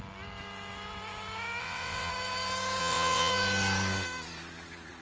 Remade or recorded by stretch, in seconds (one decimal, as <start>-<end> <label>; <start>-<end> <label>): 0.0-1.6 recorded; 1.6-2.1 remade; 2.1-2.8 recorded; 2.8-3.3 remade; 3.3-5.0 recorded